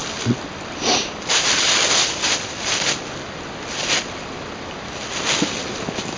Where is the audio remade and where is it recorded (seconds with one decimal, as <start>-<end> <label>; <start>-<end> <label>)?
0.0-2.0 recorded; 2.0-2.6 remade; 2.6-6.2 recorded